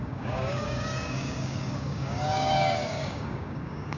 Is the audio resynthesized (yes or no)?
yes